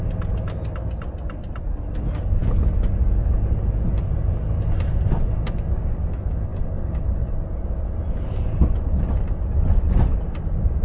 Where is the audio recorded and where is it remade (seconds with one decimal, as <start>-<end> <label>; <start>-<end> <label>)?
0.0-10.8 recorded